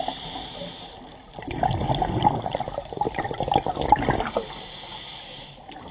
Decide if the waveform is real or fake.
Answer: real